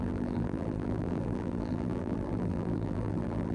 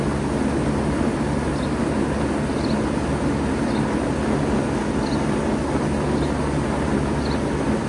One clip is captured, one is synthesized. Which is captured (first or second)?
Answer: second